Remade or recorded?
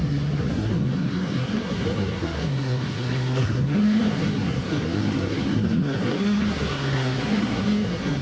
remade